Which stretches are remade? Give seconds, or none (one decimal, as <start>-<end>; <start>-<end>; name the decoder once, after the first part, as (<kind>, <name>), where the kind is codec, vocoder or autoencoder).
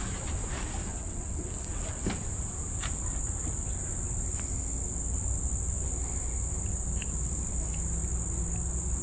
0.9-2.0 (vocoder, WaveNeXt)